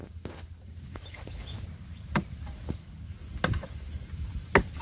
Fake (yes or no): no